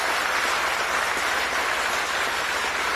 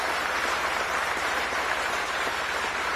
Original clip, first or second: first